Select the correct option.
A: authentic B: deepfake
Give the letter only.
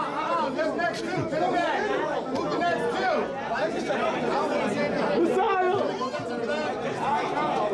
A